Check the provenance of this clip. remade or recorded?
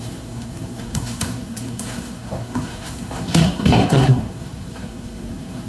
remade